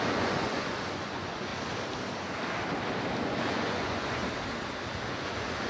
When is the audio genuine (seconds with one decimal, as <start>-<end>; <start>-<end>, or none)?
1.5-3.2; 4.2-5.1